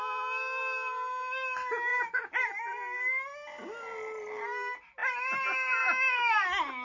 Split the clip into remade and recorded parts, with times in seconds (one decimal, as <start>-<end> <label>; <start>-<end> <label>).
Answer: 0.0-6.8 recorded